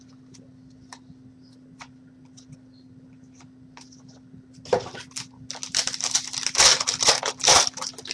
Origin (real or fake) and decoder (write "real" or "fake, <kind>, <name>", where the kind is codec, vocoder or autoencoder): real